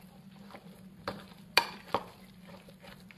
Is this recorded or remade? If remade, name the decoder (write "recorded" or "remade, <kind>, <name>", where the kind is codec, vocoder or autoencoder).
remade, vocoder, BigVGAN v2